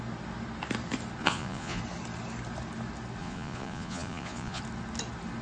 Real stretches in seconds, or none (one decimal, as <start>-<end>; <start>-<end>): 0.0-1.2; 1.8-3.2; 4.6-5.4